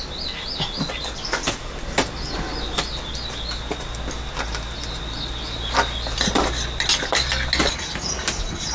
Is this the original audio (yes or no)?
yes